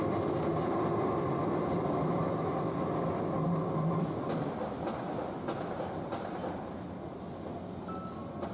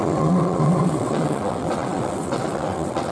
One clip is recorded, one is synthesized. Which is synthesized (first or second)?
second